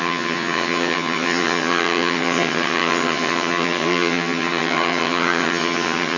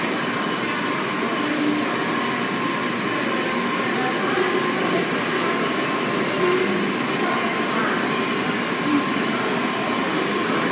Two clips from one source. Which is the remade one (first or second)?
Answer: first